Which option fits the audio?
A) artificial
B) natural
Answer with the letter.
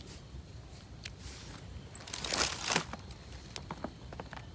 B